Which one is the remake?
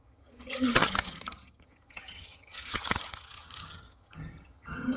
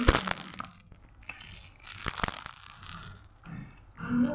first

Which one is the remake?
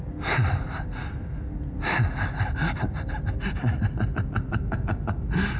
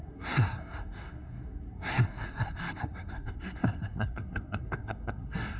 second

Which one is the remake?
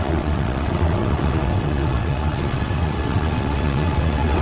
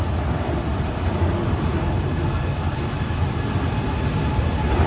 first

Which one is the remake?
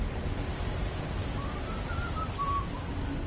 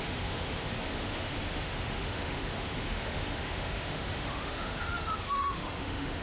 second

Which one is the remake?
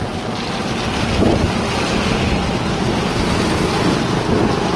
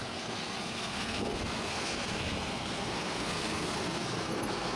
second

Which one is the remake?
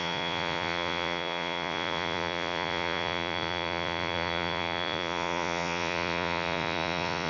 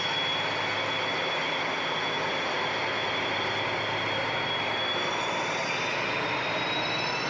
first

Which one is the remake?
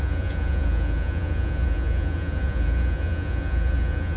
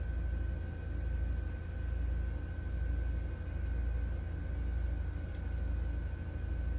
first